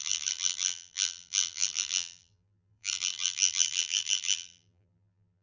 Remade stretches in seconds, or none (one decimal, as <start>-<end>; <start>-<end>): 0.0-5.4

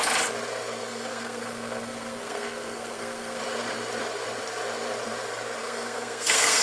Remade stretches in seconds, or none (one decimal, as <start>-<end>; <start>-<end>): 0.8-3.4; 5.6-6.6